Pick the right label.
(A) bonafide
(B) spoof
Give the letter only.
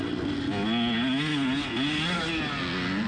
A